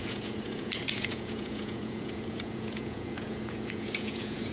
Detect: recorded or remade remade